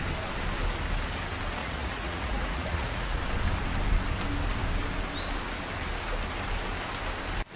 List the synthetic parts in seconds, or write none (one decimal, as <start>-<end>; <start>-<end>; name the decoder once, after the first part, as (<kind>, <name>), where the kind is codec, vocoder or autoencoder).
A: 1.6-3.2 (vocoder, Vocos)